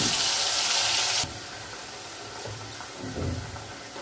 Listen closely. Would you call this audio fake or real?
real